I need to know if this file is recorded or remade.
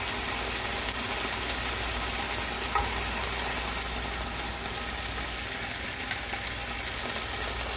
recorded